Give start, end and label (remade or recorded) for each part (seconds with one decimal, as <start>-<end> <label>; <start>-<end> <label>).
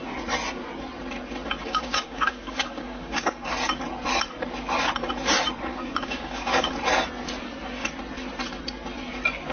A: 0.0-1.6 recorded; 1.6-3.5 remade; 3.5-5.7 recorded; 5.7-6.7 remade; 6.7-9.5 recorded